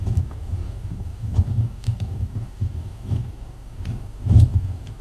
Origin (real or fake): fake